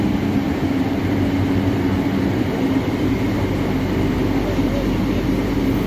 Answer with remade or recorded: recorded